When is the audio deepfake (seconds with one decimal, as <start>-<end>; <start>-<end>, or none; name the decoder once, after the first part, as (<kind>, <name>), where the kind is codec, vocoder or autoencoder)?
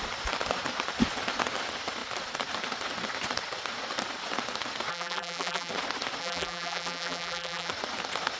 4.9-5.7 (vocoder, BigVGAN v2); 6.2-7.7